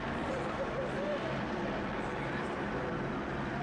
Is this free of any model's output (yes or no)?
no